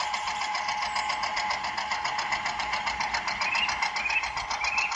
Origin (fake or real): real